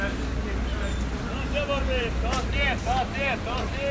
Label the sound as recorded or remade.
recorded